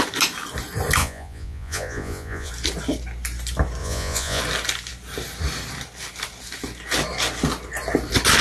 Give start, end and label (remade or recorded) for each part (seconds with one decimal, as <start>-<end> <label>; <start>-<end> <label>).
0.0-1.0 recorded; 1.0-2.5 remade; 2.5-3.8 recorded; 3.8-4.4 remade; 4.4-8.4 recorded